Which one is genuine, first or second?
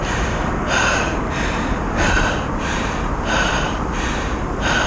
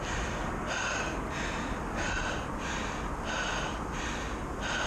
second